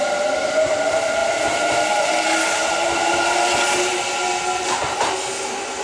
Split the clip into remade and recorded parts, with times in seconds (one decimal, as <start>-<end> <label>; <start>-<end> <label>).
0.0-5.8 recorded